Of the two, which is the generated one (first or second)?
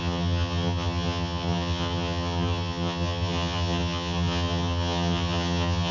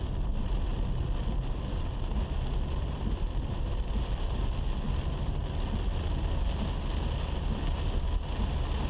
first